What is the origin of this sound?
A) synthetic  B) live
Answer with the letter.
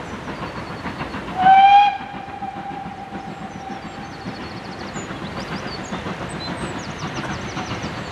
B